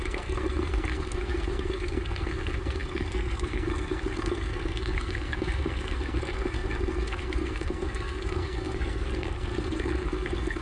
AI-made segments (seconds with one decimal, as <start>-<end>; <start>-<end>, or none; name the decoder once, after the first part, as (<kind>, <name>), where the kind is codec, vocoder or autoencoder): 0.0-10.6 (codec, SNAC)

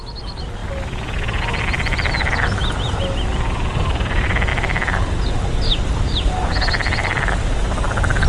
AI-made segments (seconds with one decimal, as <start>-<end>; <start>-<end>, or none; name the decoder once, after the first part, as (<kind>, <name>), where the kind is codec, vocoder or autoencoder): none

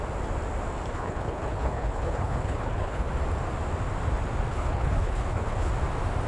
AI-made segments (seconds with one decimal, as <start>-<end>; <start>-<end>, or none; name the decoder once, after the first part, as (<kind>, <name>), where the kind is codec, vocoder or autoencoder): 0.9-3.1 (codec, HILCodec); 4.5-5.7

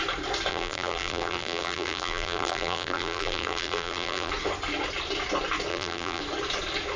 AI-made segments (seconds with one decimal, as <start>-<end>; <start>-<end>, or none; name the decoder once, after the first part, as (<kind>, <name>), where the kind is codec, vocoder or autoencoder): 0.5-4.3 (vocoder, BigVGAN v2); 5.7-6.2

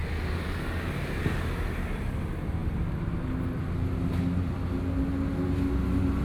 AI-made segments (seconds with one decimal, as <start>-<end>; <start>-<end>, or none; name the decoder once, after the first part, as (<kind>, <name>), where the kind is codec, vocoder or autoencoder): none

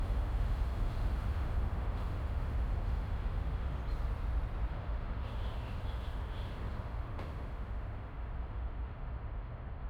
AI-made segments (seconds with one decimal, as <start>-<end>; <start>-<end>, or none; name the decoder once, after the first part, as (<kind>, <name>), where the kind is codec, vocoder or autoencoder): 0.0-3.8 (autoencoder, DAC-VAE); 4.7-9.9

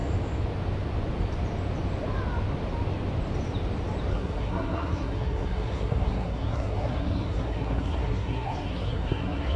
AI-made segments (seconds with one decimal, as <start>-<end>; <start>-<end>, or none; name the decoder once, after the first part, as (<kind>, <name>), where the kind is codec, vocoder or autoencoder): 4.1-9.6 (codec, SNAC)